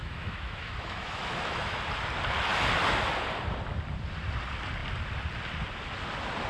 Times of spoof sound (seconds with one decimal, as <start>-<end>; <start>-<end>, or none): 0.0-1.8